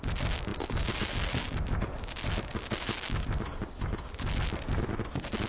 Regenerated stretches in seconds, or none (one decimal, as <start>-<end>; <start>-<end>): none